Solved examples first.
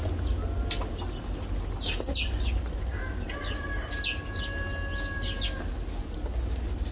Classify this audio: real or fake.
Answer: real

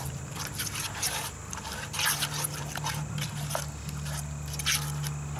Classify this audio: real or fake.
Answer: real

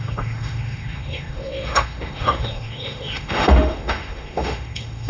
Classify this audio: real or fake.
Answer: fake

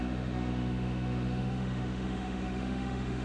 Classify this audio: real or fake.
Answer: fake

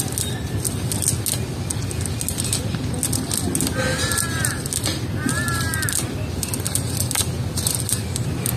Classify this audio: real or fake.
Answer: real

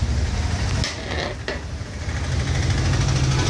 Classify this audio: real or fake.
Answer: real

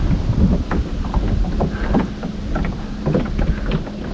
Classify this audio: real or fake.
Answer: real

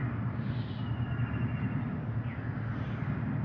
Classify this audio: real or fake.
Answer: real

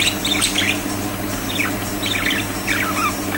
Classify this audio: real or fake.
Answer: real